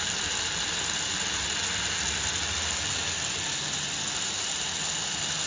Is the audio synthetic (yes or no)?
no